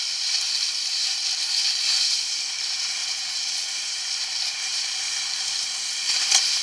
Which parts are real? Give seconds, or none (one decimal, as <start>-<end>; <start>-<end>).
0.0-3.0; 3.7-6.6